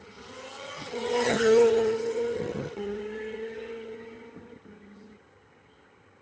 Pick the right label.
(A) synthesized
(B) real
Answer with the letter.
A